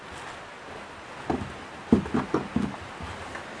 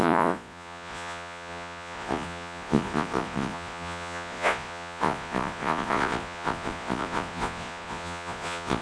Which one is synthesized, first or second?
second